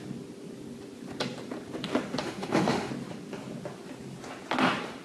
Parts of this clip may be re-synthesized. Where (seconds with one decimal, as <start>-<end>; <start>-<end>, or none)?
2.2-2.9